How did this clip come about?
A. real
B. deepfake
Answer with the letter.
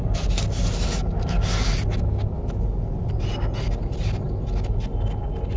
A